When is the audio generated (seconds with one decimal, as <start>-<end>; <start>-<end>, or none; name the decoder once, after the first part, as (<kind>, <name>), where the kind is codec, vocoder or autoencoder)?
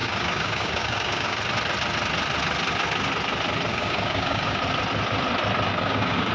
0.0-1.4 (codec, DAC); 3.7-4.6; 5.7-6.3